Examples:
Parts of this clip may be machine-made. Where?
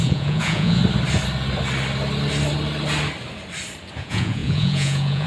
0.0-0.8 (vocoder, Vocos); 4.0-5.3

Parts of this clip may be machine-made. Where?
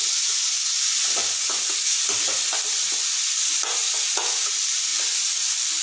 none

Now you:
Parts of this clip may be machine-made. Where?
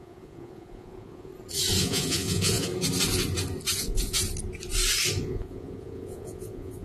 0.0-1.3 (vocoder, Vocos); 1.8-2.7; 3.8-4.2; 5.2-6.8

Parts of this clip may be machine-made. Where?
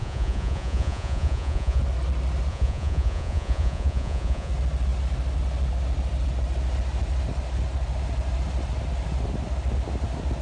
0.0-1.8 (vocoder, Vocos); 2.5-4.5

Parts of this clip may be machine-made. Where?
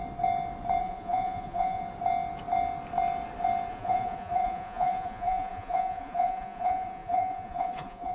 0.8-1.8 (vocoder, Vocos); 3.7-8.1